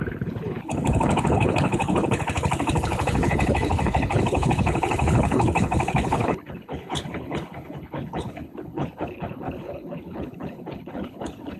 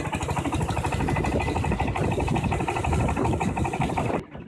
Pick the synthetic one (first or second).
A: first